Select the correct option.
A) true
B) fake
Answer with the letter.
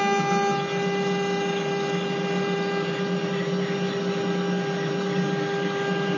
A